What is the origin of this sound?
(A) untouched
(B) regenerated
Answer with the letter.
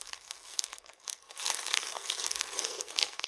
B